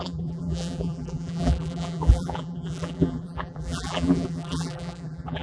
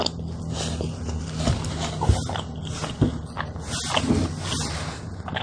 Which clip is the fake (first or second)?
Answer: first